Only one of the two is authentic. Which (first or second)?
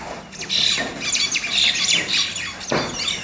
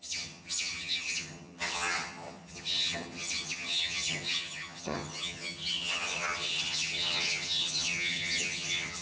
first